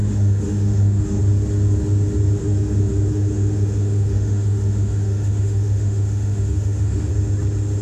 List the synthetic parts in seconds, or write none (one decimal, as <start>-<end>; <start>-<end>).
0.0-1.2; 2.4-7.1